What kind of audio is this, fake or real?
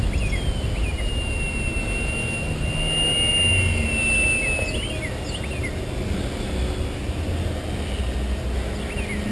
real